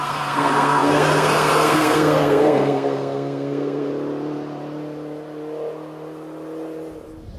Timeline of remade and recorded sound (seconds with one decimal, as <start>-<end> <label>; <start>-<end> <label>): 0.0-3.9 remade; 3.9-7.4 recorded